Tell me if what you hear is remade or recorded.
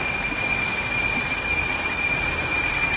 recorded